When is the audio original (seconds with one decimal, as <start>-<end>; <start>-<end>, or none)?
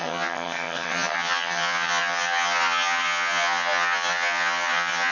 none